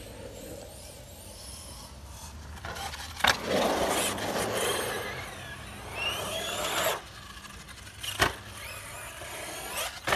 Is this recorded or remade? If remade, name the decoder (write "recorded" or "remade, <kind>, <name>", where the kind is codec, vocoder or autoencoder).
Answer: recorded